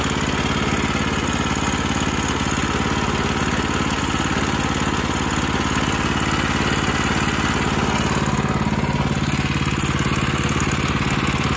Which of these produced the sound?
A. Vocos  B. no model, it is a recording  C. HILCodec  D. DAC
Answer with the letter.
B